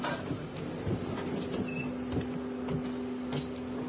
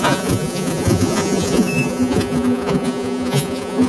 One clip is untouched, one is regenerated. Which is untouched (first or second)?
first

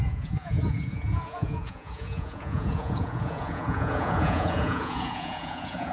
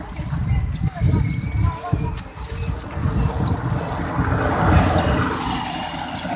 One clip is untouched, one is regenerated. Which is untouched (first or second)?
second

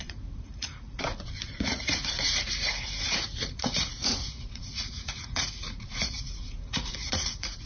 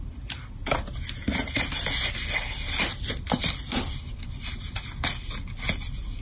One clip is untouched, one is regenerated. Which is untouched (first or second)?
second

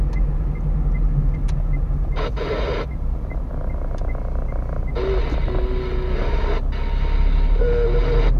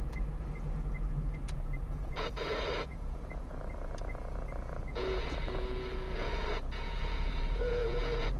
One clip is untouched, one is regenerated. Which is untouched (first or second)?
first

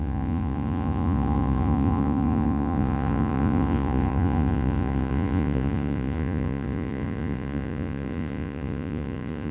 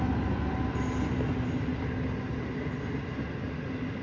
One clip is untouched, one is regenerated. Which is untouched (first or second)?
second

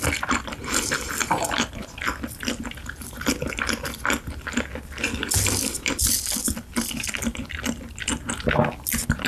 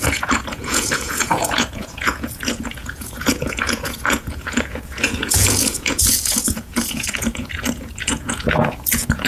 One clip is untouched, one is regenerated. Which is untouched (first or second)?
first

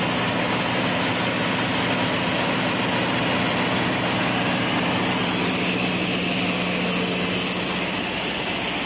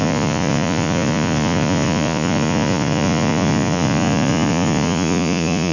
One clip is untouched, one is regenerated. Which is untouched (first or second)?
first